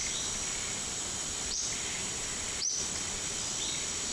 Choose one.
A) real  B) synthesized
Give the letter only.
B